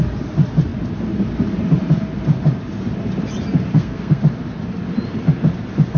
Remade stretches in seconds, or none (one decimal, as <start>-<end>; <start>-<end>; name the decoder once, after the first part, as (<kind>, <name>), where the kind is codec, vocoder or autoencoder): 3.7-4.2 (codec, SNAC)